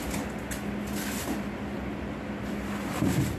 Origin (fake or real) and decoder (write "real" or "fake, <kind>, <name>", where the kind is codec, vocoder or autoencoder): real